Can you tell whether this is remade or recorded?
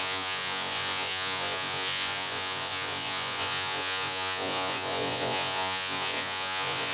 remade